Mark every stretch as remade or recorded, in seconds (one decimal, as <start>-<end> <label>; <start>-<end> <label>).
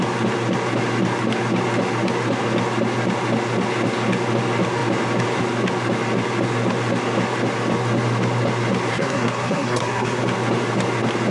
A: 0.0-8.9 recorded; 8.9-10.2 remade; 10.2-11.3 recorded